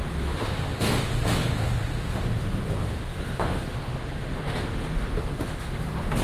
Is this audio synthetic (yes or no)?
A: yes